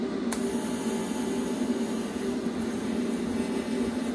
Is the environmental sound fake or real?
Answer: real